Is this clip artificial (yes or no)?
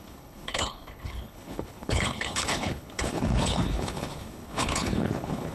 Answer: yes